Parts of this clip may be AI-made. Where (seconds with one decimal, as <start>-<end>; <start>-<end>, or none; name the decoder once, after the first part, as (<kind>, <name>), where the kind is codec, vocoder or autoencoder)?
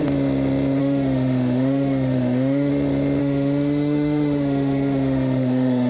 0.8-2.7 (autoencoder, DAC-VAE); 3.2-5.9